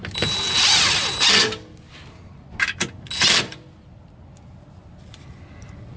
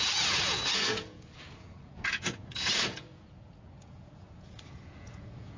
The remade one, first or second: second